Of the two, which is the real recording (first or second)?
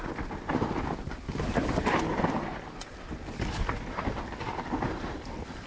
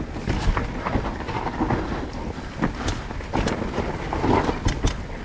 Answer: second